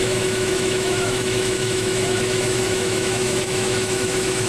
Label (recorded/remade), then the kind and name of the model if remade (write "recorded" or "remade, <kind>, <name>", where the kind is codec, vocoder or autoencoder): remade, autoencoder, DAC-VAE